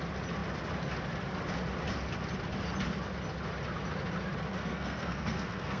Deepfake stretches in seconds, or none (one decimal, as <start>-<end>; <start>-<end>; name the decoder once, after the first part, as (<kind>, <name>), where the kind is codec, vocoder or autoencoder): 4.6-5.8 (codec, SNAC)